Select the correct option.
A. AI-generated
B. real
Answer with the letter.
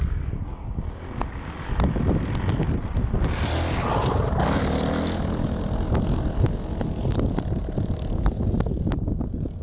B